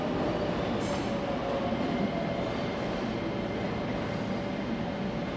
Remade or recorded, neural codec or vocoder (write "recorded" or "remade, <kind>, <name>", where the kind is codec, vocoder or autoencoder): recorded